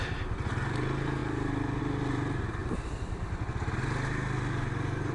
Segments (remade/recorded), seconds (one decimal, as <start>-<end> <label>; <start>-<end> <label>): 0.0-5.1 recorded